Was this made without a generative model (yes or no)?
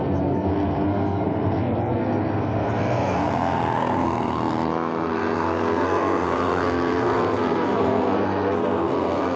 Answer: no